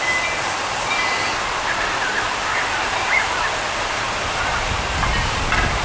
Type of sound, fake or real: real